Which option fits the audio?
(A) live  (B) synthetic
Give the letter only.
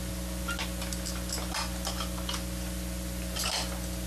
A